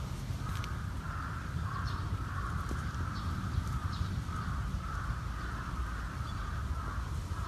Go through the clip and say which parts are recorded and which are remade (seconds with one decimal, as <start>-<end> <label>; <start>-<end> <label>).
0.0-3.8 recorded; 3.8-4.3 remade; 4.3-7.5 recorded

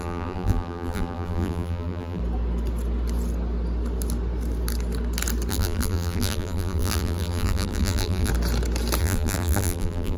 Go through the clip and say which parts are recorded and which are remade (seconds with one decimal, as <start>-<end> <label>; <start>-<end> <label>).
0.0-2.2 remade; 2.2-5.5 recorded; 5.5-8.3 remade; 8.3-9.0 recorded; 9.0-10.2 remade

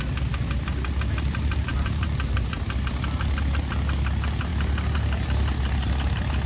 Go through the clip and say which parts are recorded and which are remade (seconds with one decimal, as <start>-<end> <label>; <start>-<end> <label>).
0.0-1.7 recorded; 1.7-2.4 remade; 2.4-6.5 recorded

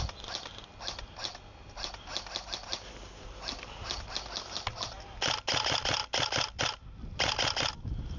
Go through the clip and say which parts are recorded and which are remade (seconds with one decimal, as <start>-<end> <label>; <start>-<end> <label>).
0.0-8.2 recorded

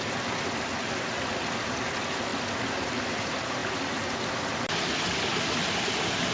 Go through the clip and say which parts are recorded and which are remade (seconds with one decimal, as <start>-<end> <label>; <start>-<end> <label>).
0.0-6.3 recorded